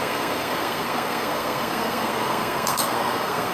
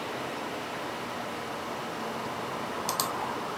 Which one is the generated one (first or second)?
first